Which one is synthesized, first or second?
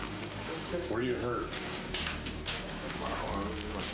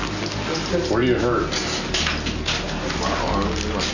first